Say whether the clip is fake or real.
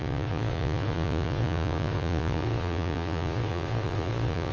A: fake